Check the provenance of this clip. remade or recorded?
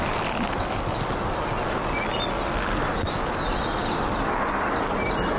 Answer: recorded